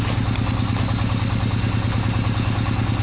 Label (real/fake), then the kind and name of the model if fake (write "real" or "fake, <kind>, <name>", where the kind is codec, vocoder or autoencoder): real